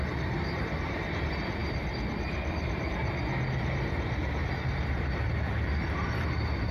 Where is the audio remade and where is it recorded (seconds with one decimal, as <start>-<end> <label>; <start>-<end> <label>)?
0.0-6.7 remade

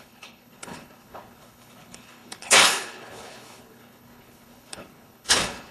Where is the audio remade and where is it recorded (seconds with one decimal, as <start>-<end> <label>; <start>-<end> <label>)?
0.0-5.7 remade

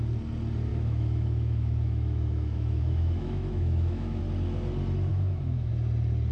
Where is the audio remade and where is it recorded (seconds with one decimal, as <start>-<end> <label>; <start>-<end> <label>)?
0.0-0.7 recorded; 0.7-4.2 remade; 4.2-5.1 recorded; 5.1-5.7 remade; 5.7-6.3 recorded

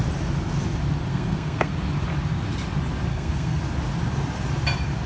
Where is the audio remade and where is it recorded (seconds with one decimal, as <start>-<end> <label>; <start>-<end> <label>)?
0.0-1.1 recorded; 1.1-1.7 remade; 1.7-3.1 recorded; 3.1-3.6 remade; 3.6-5.1 recorded

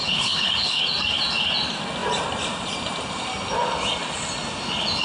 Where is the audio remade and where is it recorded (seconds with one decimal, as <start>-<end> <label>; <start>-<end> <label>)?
0.0-0.8 remade; 0.8-5.0 recorded

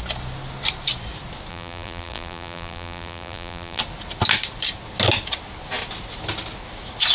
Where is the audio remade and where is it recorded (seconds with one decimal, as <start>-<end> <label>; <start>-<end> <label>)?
0.0-1.5 recorded; 1.5-3.8 remade; 3.8-7.1 recorded